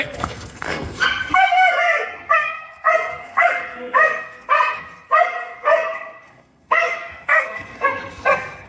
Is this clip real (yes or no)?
no